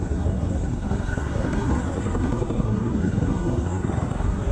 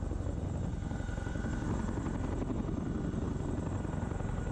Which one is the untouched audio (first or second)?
second